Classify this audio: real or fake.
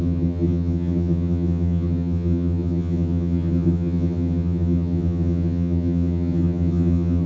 fake